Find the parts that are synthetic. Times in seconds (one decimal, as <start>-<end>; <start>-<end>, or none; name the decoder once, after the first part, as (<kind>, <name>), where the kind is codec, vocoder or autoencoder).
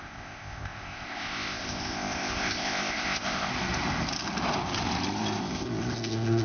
0.0-3.5 (codec, ZipCodec); 5.4-6.4